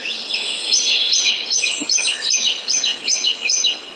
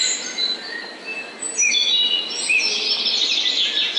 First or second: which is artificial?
first